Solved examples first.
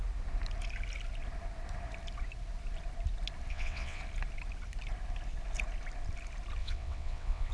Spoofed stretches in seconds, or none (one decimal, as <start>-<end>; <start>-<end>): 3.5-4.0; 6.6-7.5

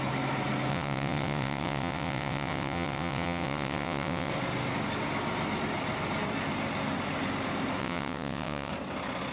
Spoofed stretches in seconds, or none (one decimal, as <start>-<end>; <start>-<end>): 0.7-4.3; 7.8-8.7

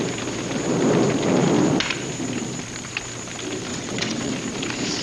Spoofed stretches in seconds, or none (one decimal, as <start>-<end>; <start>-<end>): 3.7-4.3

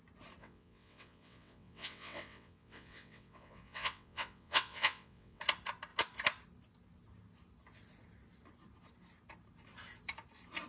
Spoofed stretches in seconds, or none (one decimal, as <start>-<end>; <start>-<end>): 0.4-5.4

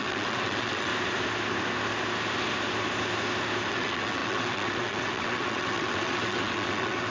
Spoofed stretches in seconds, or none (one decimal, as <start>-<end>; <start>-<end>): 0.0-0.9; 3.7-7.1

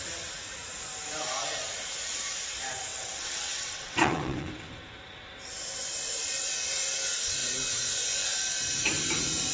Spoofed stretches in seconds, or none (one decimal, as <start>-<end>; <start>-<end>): 2.9-4.5